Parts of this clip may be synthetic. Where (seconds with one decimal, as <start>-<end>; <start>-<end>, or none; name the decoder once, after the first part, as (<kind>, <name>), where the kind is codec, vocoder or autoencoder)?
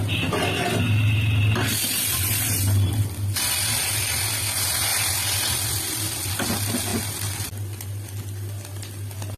none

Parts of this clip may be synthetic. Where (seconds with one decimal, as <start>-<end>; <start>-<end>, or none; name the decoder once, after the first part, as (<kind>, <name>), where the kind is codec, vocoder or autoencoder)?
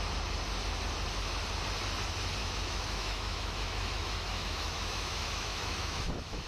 2.4-6.5 (autoencoder, DAC-VAE)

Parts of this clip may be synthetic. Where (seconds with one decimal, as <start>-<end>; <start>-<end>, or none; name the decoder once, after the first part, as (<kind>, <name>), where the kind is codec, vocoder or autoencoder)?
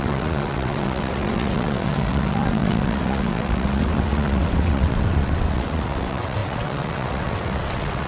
0.0-8.1 (vocoder, WaveNeXt)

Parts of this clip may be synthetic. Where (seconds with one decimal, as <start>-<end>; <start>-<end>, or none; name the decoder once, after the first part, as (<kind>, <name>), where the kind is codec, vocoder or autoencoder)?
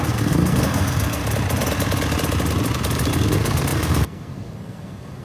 0.0-1.2 (codec, SNAC); 3.1-5.2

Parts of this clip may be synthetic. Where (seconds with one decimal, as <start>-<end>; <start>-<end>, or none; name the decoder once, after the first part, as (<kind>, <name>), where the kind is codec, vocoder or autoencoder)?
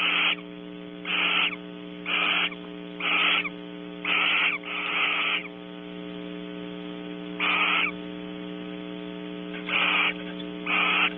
none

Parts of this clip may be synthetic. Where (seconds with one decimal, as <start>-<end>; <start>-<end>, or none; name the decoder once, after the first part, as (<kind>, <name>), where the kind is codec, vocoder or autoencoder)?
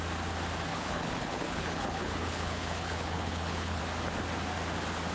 0.7-3.8 (codec, HILCodec)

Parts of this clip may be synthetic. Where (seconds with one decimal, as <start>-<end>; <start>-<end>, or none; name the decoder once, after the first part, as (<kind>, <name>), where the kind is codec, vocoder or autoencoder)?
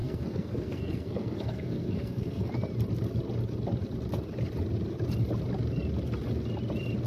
0.0-2.5 (codec, SNAC)